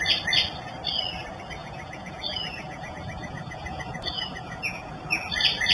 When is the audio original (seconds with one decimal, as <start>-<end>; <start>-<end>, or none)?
0.0-1.6; 5.0-5.7